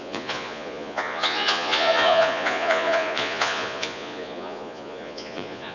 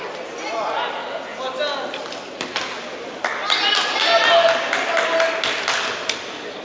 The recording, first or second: second